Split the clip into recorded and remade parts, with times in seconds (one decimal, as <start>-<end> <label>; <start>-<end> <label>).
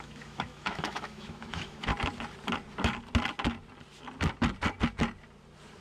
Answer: 0.0-1.9 remade; 1.9-5.8 recorded